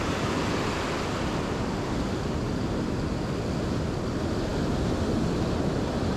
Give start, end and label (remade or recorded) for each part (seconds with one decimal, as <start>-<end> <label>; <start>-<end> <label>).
0.0-6.2 recorded